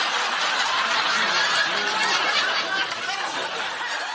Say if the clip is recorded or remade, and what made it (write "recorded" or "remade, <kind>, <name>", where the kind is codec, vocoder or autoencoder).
recorded